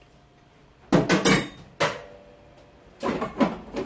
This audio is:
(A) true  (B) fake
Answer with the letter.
A